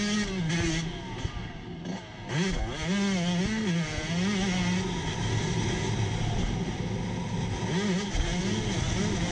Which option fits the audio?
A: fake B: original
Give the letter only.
B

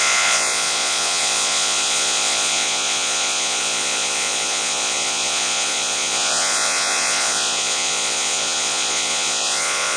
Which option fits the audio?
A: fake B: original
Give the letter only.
A